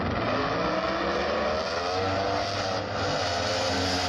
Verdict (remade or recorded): recorded